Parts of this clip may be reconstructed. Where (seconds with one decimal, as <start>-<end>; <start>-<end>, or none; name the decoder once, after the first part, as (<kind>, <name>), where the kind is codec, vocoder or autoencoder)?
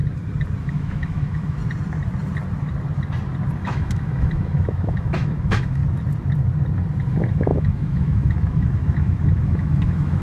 0.6-1.6 (autoencoder, DAC-VAE); 3.6-5.8; 7.1-10.2